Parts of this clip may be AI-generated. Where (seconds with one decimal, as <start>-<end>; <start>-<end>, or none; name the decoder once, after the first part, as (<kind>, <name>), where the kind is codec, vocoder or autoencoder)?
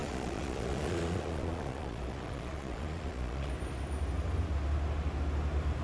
0.0-3.5 (vocoder, Vocos)